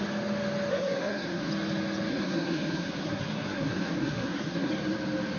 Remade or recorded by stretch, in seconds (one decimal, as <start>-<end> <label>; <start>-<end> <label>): 0.0-0.7 recorded; 0.7-1.5 remade; 1.5-2.1 recorded; 2.1-4.7 remade; 4.7-5.4 recorded